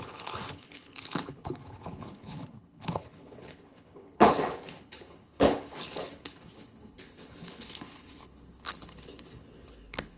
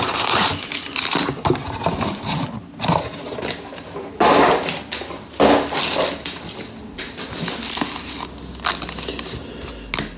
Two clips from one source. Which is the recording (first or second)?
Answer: second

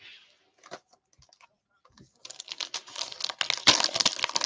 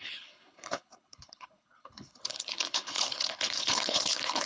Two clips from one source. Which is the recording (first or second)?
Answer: first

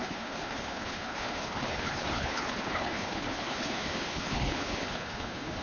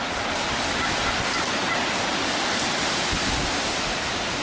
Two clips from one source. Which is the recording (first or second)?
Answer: second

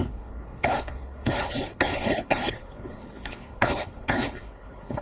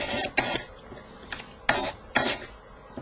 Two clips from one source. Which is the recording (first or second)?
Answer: second